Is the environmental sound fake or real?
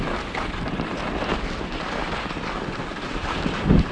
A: real